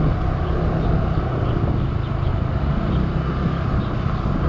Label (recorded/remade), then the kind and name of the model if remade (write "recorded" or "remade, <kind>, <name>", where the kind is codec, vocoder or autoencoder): recorded